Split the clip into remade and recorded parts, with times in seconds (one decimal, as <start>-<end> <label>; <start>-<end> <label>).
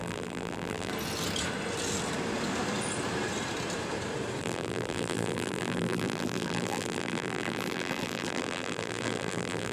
0.0-0.9 remade; 0.9-4.4 recorded; 4.4-9.7 remade